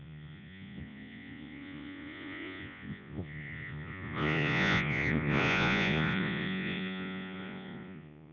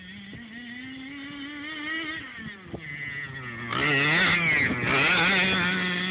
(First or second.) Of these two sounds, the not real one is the first